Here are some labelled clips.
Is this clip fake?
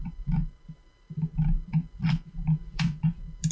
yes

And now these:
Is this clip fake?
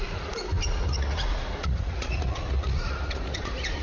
yes